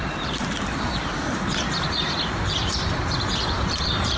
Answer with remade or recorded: remade